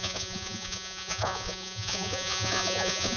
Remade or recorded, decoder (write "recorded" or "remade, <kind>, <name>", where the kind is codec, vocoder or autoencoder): remade, vocoder, Vocos